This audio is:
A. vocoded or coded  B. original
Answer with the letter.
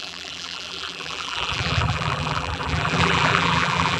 A